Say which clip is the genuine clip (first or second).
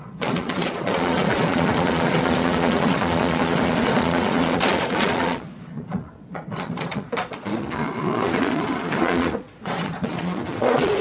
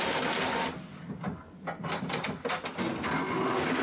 second